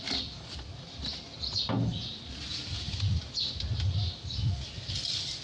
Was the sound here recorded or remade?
recorded